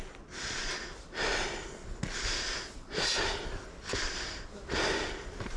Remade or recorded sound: recorded